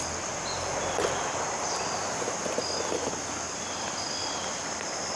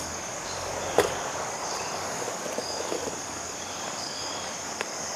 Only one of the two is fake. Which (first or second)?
second